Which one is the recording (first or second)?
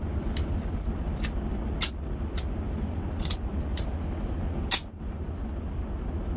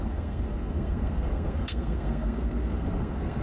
first